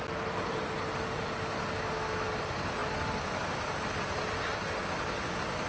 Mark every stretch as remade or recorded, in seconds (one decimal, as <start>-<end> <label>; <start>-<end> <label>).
0.0-5.7 recorded